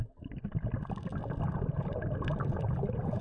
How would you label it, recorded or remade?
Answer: recorded